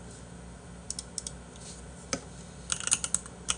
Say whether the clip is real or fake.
real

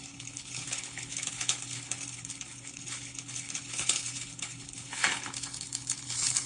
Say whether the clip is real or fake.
fake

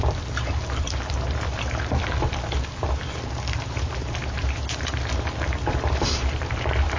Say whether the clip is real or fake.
fake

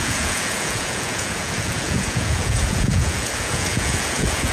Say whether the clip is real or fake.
fake